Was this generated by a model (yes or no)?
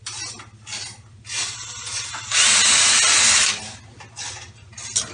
no